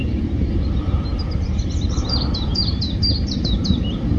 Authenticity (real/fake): fake